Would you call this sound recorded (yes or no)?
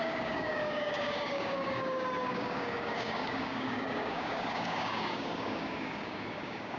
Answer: no